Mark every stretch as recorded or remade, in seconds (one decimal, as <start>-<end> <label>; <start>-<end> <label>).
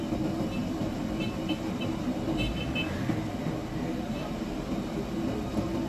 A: 0.0-5.9 recorded